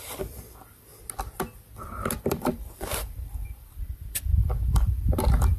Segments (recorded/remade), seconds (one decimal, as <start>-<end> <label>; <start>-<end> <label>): 0.0-0.9 remade; 0.9-2.2 recorded; 2.2-5.6 remade

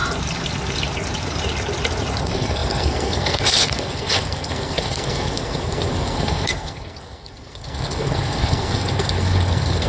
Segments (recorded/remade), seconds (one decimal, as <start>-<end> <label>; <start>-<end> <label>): 0.0-2.2 recorded; 2.2-9.9 remade

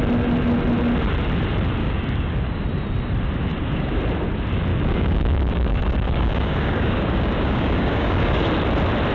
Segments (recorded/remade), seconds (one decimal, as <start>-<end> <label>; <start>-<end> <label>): 0.0-1.8 recorded; 1.8-2.3 remade; 2.3-3.5 recorded; 3.5-4.0 remade; 4.0-4.7 recorded; 4.7-8.4 remade; 8.4-9.1 recorded

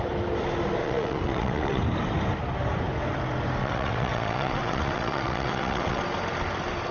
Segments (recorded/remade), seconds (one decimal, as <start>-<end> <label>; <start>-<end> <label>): 0.0-0.8 recorded; 0.8-1.8 remade; 1.8-3.6 recorded; 3.6-6.0 remade; 6.0-6.9 recorded

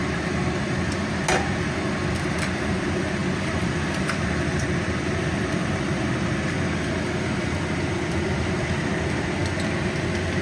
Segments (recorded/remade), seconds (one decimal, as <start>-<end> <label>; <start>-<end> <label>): 0.0-3.2 recorded; 3.2-6.0 remade; 6.0-10.4 recorded

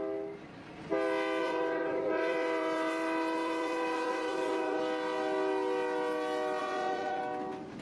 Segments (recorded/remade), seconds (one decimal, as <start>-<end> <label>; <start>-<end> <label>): 0.0-1.4 recorded; 1.4-4.8 remade; 4.8-6.6 recorded; 6.6-7.2 remade; 7.2-7.8 recorded

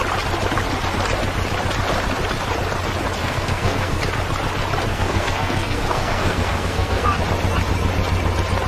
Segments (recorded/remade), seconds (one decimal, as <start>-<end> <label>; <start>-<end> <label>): 0.0-3.2 recorded; 3.2-4.0 remade; 4.0-4.9 recorded; 4.9-7.2 remade; 7.2-8.7 recorded